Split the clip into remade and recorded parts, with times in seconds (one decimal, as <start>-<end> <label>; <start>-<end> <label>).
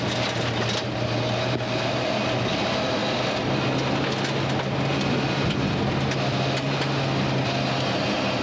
0.0-8.4 recorded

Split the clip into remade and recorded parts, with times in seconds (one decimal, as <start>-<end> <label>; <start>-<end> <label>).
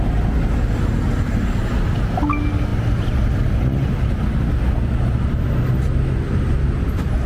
0.0-7.3 recorded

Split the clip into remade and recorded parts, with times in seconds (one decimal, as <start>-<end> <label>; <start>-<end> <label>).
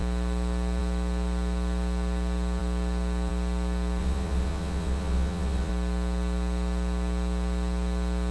0.0-4.0 recorded; 4.0-5.7 remade; 5.7-8.3 recorded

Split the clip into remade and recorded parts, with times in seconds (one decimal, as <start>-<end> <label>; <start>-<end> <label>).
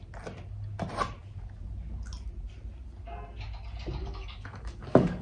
0.0-4.0 recorded; 4.0-5.2 remade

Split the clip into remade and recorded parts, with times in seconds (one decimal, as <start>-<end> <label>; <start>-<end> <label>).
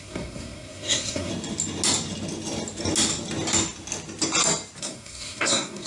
0.0-1.3 remade; 1.3-4.8 recorded; 4.8-5.9 remade